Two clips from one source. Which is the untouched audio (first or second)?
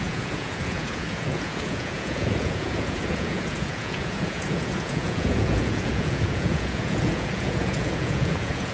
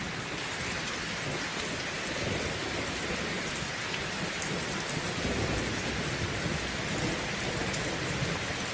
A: second